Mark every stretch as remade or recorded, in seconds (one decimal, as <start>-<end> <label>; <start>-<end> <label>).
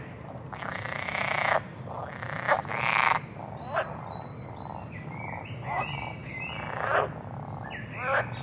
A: 0.0-8.4 recorded